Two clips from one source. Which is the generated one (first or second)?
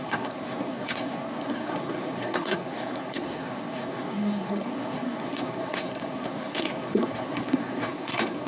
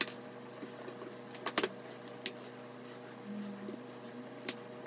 first